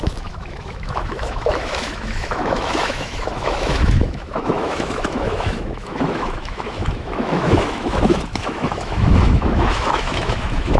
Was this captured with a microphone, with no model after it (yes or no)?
no